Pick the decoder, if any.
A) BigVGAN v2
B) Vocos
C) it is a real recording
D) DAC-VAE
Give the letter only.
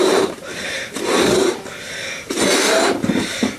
A